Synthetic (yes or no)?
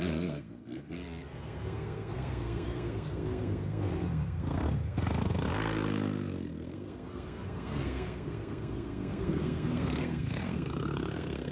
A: yes